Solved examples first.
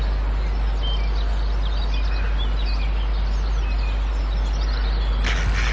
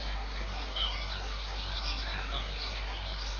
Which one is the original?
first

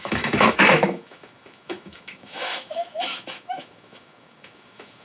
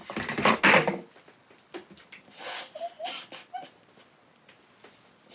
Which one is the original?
second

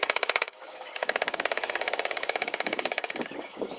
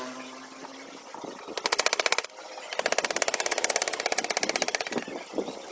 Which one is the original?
second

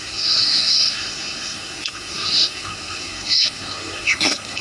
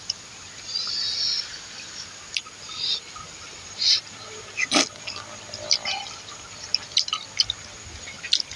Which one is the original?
second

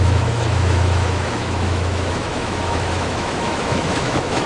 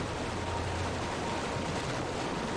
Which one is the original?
second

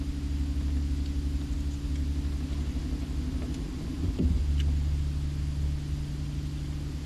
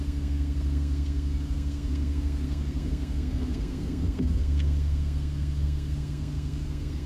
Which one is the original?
first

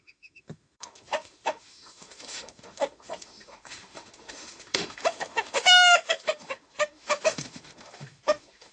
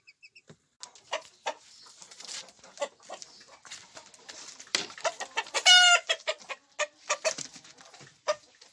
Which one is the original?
second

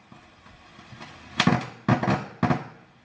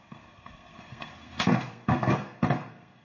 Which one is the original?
first